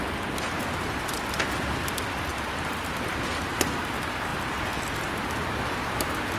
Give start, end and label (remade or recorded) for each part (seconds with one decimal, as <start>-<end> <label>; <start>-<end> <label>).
0.0-6.4 recorded